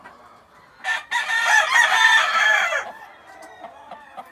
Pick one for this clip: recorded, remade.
recorded